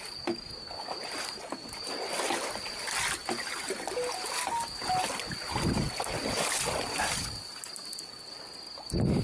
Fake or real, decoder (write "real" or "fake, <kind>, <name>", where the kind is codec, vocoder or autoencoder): real